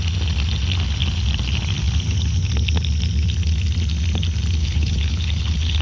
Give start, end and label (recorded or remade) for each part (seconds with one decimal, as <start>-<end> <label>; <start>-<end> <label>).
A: 0.0-4.6 recorded; 4.6-5.8 remade